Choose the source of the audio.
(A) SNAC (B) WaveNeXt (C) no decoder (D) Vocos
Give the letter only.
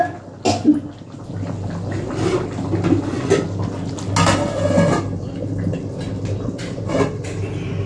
C